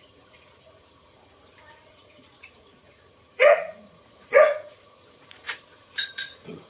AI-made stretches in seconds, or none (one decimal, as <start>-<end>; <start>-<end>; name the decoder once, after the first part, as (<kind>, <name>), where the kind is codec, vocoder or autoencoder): 0.0-6.7 (vocoder, Vocos)